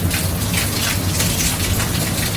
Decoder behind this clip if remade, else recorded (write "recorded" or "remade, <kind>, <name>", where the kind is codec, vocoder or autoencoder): recorded